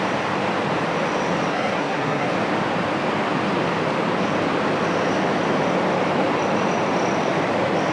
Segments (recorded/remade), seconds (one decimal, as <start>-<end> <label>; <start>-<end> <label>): 0.0-1.5 recorded; 1.5-2.3 remade; 2.3-7.9 recorded

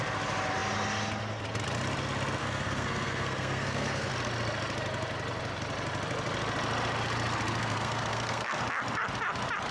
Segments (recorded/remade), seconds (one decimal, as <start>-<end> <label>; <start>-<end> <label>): 0.0-2.4 recorded; 2.4-4.1 remade; 4.1-7.6 recorded; 7.6-8.6 remade; 8.6-9.7 recorded

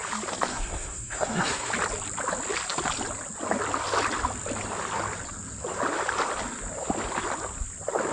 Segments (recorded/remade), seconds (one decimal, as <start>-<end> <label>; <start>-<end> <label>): 0.0-0.5 recorded; 0.5-1.7 remade; 1.7-8.1 recorded

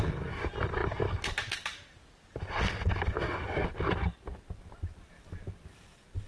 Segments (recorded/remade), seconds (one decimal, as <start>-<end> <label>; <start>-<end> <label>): 0.0-6.3 recorded